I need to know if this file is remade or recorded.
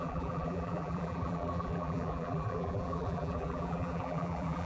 remade